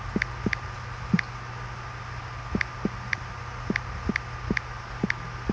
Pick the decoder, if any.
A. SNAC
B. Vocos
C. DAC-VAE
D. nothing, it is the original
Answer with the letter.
D